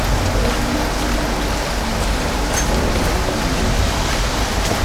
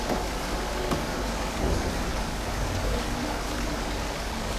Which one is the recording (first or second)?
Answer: first